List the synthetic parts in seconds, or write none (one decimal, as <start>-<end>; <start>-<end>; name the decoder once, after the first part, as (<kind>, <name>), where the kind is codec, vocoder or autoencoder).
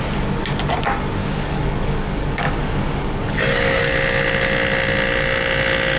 1.2-3.9 (codec, DAC)